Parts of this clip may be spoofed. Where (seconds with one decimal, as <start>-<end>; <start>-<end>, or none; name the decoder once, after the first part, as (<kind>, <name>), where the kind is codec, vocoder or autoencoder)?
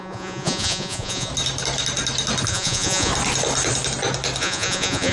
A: 0.0-1.3 (vocoder, Vocos); 2.5-3.1; 4.4-5.1